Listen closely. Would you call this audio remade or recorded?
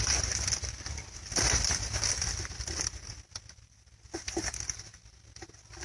recorded